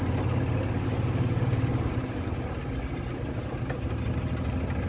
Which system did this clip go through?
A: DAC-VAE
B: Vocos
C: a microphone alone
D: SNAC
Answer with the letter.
C